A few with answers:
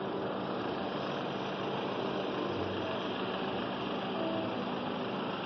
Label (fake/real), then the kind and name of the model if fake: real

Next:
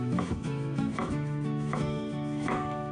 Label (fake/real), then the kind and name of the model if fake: fake, autoencoder, DAC-VAE